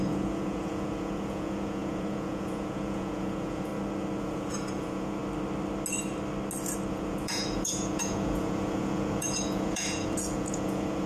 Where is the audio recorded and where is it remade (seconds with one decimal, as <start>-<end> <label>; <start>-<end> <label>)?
0.0-3.7 remade; 3.7-4.2 recorded; 4.2-5.2 remade; 5.2-6.9 recorded; 6.9-11.1 remade

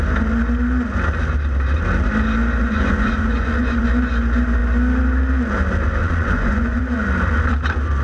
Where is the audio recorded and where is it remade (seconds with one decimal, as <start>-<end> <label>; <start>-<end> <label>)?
0.0-2.6 recorded; 2.6-3.9 remade; 3.9-6.0 recorded; 6.0-6.8 remade; 6.8-8.0 recorded

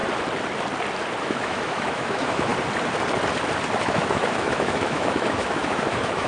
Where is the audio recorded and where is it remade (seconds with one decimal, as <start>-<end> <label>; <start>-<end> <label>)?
0.0-1.2 recorded; 1.2-2.5 remade; 2.5-3.8 recorded; 3.8-6.3 remade

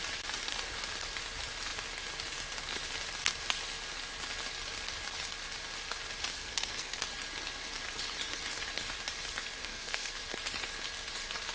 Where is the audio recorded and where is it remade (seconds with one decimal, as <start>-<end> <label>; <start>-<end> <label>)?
0.0-6.3 recorded; 6.3-7.0 remade; 7.0-9.6 recorded; 9.6-10.2 remade; 10.2-11.5 recorded